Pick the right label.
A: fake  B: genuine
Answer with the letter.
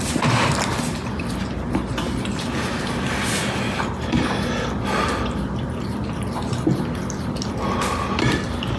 B